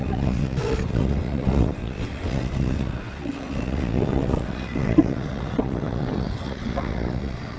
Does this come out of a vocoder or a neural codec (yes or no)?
yes